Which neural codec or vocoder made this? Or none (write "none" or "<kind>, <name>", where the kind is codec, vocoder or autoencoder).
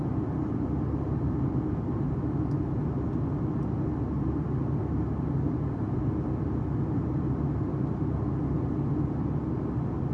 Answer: none